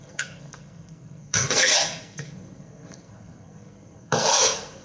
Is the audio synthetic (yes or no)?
yes